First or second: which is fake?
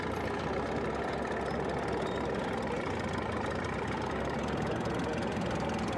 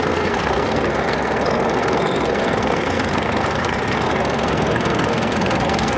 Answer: second